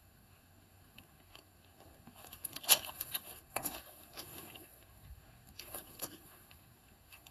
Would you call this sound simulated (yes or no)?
yes